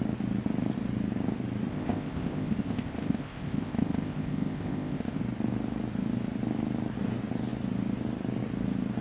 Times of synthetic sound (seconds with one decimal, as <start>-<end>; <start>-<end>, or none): 1.7-5.2